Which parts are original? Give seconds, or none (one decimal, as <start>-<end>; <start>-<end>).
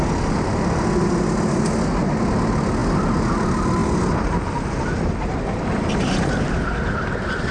0.0-7.5